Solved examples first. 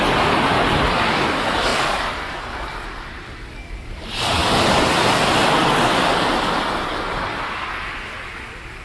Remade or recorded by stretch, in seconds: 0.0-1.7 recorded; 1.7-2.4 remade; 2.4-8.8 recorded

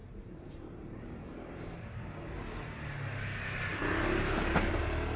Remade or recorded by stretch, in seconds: 0.0-2.4 remade; 2.4-3.7 recorded; 3.7-4.8 remade; 4.8-5.2 recorded